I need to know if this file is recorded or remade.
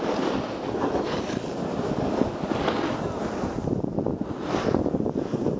recorded